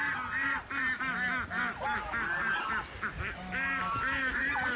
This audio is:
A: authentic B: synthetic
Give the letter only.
A